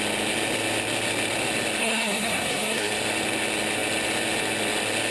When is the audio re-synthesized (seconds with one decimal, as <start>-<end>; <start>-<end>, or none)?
1.8-2.9